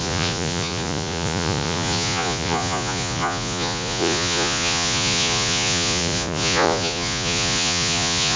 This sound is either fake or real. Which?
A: fake